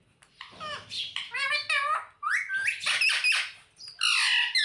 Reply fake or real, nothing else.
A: real